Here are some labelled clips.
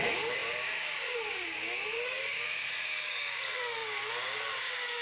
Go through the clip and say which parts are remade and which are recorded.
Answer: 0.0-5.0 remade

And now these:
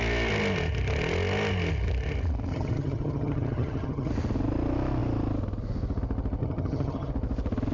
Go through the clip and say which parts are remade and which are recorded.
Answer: 0.0-2.5 recorded; 2.5-4.1 remade; 4.1-6.4 recorded; 6.4-7.1 remade; 7.1-7.7 recorded

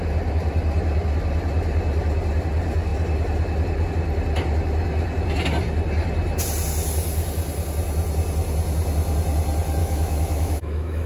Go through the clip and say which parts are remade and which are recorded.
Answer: 0.0-9.8 recorded; 9.8-11.1 remade

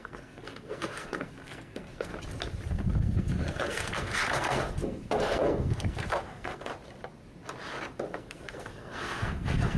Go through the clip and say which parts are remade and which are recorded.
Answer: 0.0-2.1 remade; 2.1-2.7 recorded; 2.7-6.7 remade; 6.7-8.1 recorded; 8.1-9.8 remade